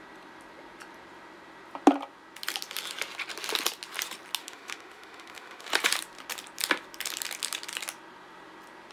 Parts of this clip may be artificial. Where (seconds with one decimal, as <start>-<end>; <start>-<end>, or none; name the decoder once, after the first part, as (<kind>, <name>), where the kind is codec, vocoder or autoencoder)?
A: 4.4-5.7 (autoencoder, DAC-VAE)